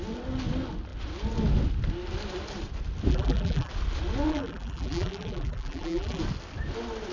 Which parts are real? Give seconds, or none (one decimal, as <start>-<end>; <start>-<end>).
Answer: 0.0-3.1; 3.7-4.3; 6.2-7.1